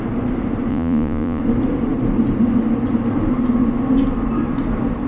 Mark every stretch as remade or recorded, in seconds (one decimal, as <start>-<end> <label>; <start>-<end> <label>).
0.0-0.7 recorded; 0.7-1.4 remade; 1.4-5.1 recorded